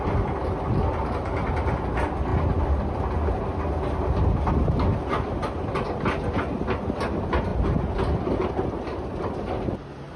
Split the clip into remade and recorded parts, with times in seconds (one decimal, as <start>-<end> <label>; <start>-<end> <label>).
0.0-10.2 recorded